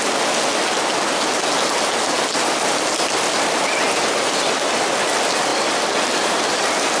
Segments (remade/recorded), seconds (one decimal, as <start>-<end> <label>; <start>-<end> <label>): 0.0-7.0 recorded